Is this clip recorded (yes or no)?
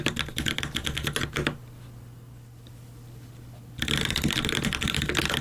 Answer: yes